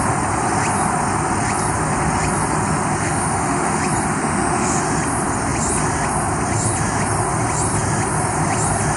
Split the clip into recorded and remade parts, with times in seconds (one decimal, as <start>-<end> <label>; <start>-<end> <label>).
0.0-3.0 recorded; 3.0-3.8 remade; 3.8-4.2 recorded; 4.2-4.8 remade; 4.8-9.0 recorded